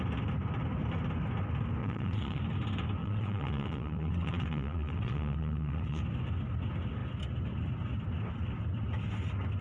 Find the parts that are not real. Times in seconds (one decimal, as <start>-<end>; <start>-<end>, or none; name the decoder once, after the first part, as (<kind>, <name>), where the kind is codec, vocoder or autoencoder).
1.8-2.4 (vocoder, WaveNeXt); 3.0-6.0